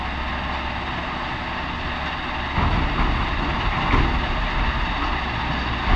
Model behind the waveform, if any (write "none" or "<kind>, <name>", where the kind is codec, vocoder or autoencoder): none